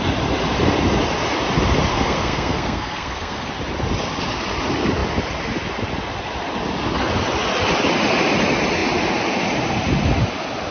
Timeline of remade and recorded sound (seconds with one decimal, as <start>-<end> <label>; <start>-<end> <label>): 0.0-1.9 recorded; 1.9-3.5 remade; 3.5-10.7 recorded